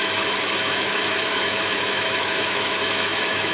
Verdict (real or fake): fake